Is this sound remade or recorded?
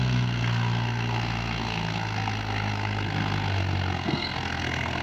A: remade